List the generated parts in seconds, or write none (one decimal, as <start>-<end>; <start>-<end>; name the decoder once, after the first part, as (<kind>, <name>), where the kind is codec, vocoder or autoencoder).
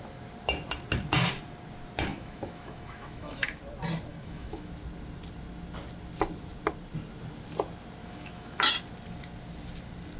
2.1-3.6 (autoencoder, DAC-VAE); 4.1-4.7; 8.0-8.7